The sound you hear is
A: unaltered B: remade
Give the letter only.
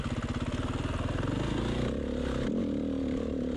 A